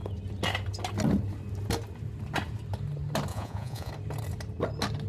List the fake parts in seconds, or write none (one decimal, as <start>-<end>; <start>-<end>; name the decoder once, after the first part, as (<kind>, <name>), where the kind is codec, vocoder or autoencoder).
3.3-3.9 (vocoder, Vocos)